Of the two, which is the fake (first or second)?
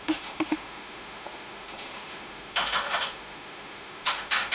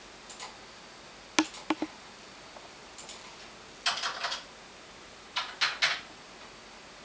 first